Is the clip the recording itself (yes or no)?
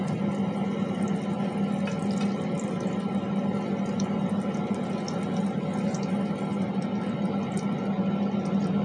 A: yes